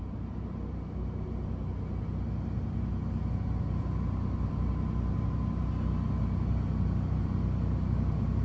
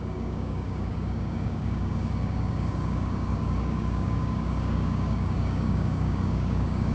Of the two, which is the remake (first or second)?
second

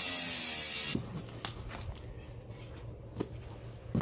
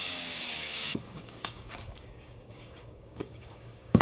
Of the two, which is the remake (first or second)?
second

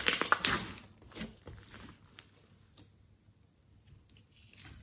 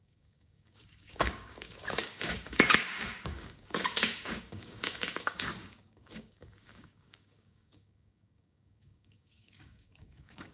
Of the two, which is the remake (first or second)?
second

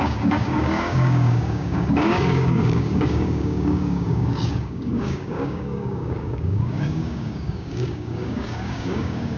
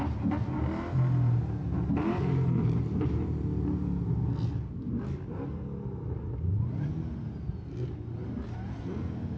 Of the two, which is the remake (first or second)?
first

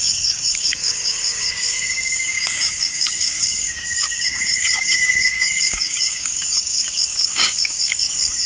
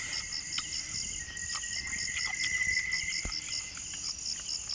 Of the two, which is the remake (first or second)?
first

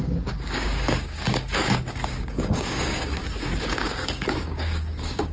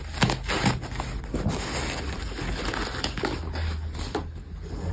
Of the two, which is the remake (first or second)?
first